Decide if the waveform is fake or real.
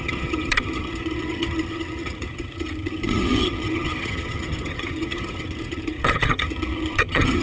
fake